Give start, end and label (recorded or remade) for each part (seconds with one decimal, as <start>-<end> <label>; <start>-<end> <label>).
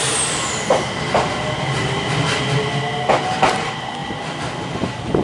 0.0-4.0 recorded; 4.0-5.2 remade